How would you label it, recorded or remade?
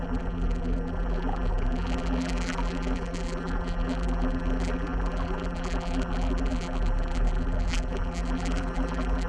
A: remade